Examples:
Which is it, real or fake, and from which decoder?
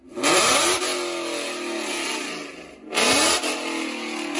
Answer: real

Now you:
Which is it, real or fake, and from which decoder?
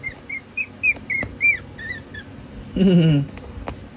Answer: real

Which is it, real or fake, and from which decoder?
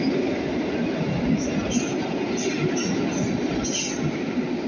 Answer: real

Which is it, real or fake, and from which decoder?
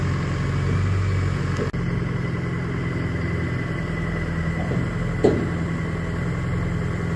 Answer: real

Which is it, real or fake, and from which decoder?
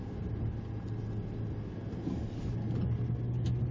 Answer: real